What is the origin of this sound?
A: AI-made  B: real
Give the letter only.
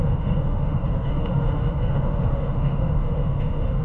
A